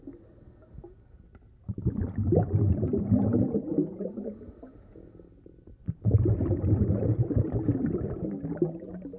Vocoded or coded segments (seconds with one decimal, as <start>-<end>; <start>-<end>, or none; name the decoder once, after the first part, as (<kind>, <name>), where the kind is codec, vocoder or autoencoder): 3.3-4.2 (vocoder, Vocos)